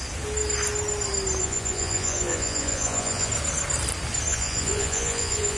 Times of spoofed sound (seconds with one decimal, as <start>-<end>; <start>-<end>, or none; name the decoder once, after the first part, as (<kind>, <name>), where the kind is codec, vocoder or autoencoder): 1.4-3.3 (vocoder, Vocos); 4.3-5.6